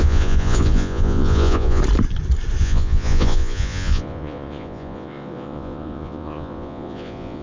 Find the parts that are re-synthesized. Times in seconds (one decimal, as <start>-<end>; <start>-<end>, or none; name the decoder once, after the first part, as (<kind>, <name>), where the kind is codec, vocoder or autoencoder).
0.0-1.8 (vocoder, Vocos); 2.6-7.4